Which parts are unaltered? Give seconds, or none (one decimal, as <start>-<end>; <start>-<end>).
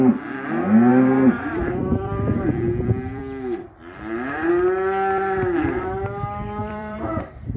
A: 0.0-0.9; 3.2-6.6; 7.1-7.6